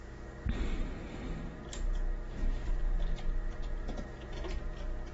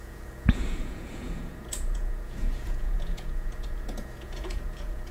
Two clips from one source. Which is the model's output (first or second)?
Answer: second